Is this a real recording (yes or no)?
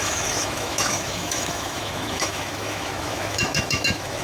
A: no